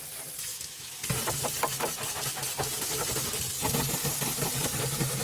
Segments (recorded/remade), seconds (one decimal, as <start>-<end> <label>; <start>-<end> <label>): 0.0-0.5 recorded; 0.5-1.0 remade; 1.0-5.2 recorded